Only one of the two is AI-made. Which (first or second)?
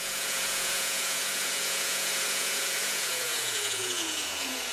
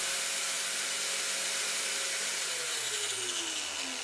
first